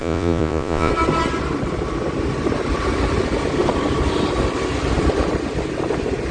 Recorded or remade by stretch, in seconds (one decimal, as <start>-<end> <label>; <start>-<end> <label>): 0.0-0.9 remade; 0.9-6.3 recorded